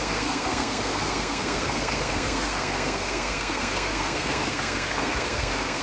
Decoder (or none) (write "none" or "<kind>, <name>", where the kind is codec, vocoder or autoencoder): codec, SNAC